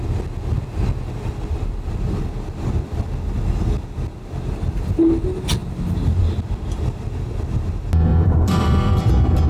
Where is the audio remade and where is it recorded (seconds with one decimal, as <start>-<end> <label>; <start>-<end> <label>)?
0.0-8.1 recorded; 8.1-9.0 remade; 9.0-9.5 recorded